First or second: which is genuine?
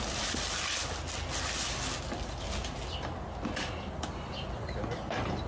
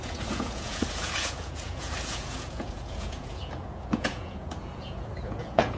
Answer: first